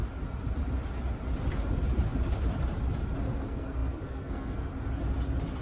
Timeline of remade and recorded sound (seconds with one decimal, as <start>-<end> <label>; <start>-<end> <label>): 0.0-3.2 recorded; 3.2-4.7 remade; 4.7-5.6 recorded